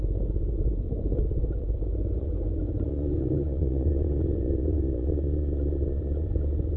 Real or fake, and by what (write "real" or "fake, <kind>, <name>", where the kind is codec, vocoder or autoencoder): fake, vocoder, Vocos